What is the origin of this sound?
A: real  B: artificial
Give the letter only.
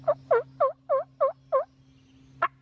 A